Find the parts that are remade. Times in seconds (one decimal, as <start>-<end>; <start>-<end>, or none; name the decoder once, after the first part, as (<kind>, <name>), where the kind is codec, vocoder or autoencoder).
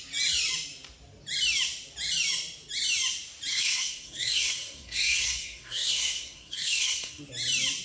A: 3.5-7.2 (codec, SNAC)